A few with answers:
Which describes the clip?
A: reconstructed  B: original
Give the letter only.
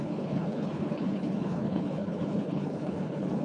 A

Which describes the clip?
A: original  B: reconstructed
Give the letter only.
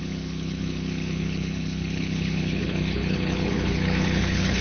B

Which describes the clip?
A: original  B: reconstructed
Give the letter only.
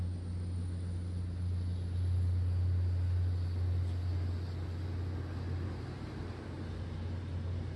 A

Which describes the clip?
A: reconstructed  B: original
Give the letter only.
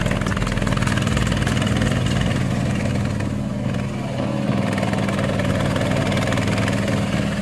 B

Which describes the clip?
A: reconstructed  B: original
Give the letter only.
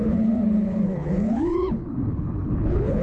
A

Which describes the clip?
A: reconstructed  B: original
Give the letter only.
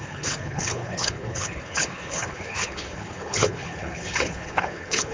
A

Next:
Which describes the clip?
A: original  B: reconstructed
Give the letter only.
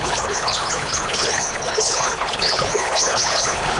B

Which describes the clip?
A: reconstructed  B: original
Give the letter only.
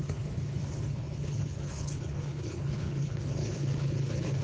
A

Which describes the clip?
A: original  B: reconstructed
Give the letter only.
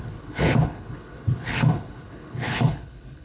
B